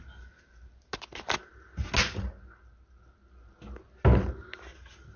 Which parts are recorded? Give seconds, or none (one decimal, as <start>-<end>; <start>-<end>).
0.0-5.2